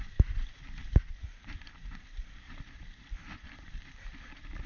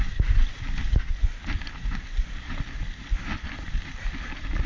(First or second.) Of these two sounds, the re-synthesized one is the first